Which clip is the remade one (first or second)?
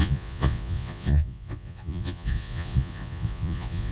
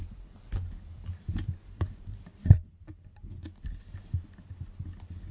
first